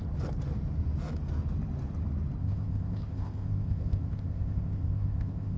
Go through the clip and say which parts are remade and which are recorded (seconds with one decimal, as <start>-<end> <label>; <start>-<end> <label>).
0.0-2.4 recorded; 2.4-5.6 remade